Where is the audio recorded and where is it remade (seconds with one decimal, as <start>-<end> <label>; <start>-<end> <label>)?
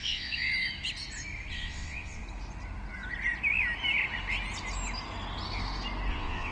0.0-0.5 remade; 0.5-1.5 recorded; 1.5-2.2 remade; 2.2-6.1 recorded; 6.1-6.5 remade